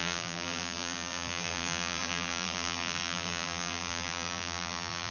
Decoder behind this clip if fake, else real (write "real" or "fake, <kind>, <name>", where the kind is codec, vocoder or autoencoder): fake, vocoder, BigVGAN v2